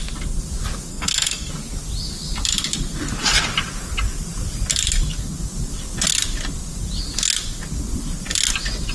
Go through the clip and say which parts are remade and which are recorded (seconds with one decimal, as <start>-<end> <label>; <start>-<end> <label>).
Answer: 0.0-0.9 recorded; 0.9-1.5 remade; 1.5-8.9 recorded